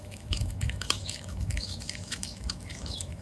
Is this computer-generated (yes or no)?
yes